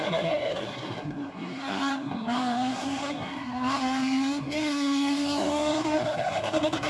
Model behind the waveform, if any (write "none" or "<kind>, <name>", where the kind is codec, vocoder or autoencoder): codec, SNAC